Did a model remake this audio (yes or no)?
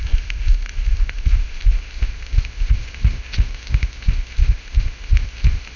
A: yes